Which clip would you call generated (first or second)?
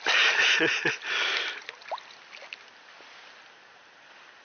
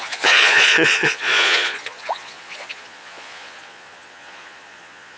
second